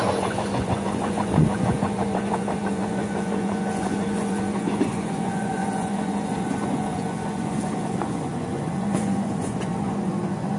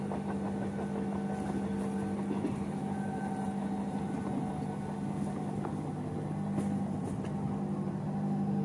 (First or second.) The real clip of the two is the second